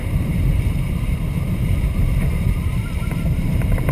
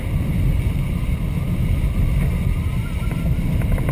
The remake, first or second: first